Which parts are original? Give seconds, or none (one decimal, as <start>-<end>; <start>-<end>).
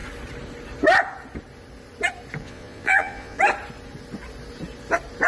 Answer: 0.0-2.4; 3.4-5.3